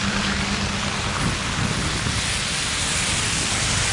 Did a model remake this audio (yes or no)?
no